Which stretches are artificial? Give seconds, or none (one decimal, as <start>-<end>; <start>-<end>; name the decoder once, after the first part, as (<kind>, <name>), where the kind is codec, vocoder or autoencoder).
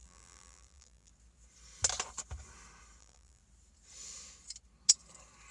0.0-1.1 (vocoder, BigVGAN v2); 3.0-3.4